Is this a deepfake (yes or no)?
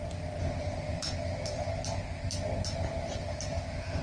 no